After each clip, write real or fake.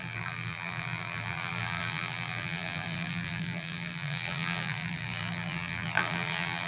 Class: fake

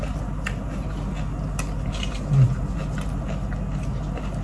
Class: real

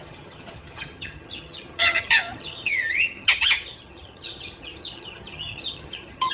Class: fake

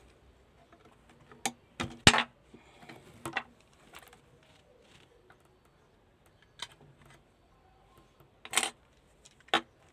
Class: real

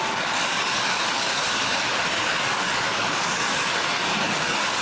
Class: fake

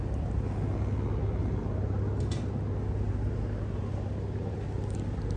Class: real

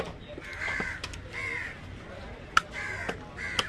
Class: real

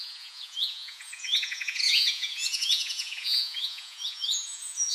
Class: fake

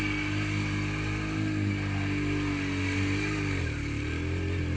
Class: real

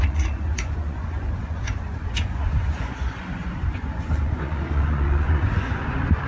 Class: fake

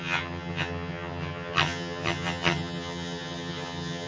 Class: fake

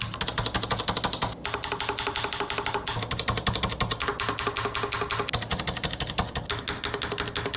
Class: real